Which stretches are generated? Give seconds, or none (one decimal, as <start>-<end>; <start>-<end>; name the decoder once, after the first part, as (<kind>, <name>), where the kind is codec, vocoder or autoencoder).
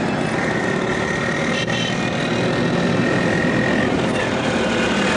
none